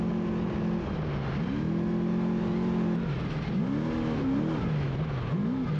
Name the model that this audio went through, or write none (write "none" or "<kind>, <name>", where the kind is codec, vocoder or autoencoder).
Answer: none